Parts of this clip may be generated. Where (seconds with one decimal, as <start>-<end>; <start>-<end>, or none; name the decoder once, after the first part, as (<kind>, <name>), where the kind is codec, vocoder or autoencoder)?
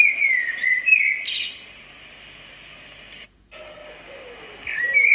none